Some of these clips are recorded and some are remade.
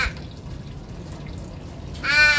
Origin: recorded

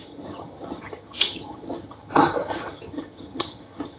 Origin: remade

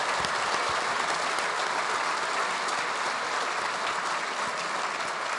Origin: recorded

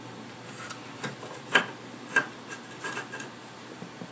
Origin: recorded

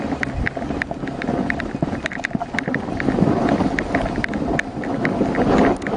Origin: recorded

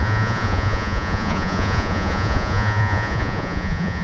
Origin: remade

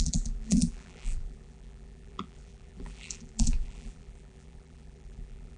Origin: remade